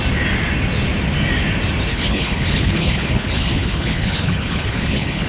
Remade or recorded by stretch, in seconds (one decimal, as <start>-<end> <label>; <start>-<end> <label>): 0.0-1.9 recorded; 1.9-5.3 remade